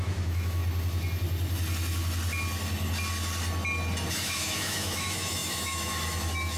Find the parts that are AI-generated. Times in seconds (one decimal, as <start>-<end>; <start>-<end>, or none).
0.0-0.6; 4.1-6.6